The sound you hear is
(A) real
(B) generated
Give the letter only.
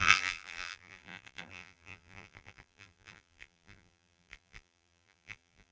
B